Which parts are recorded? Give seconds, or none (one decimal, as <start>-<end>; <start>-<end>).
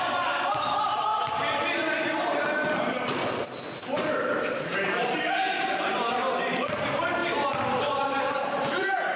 none